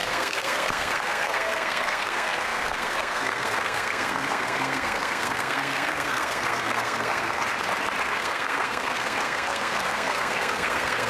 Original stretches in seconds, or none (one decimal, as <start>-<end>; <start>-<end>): 7.4-8.0